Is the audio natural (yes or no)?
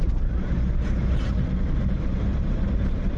no